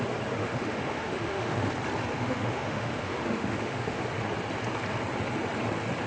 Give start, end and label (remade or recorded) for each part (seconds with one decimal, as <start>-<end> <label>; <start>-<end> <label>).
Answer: 0.0-0.4 recorded; 0.4-1.7 remade; 1.7-2.1 recorded; 2.1-4.0 remade; 4.0-6.1 recorded